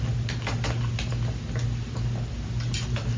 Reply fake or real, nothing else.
real